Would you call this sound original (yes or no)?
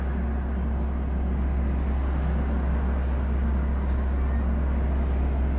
yes